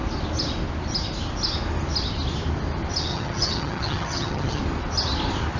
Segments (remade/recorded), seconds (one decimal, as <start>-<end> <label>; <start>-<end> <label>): 0.0-3.1 recorded; 3.1-4.6 remade; 4.6-5.6 recorded